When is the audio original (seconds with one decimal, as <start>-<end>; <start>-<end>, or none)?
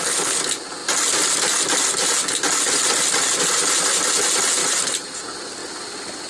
0.0-4.6; 5.1-6.3